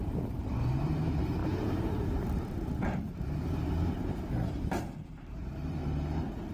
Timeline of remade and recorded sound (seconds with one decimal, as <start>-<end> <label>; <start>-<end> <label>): 0.0-5.8 remade; 5.8-6.5 recorded